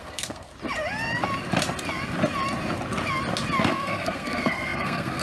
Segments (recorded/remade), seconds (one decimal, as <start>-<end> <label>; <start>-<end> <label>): 0.0-0.5 remade; 0.5-3.6 recorded; 3.6-5.2 remade